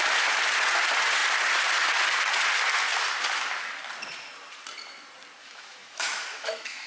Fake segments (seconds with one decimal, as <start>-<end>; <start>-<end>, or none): 5.4-6.9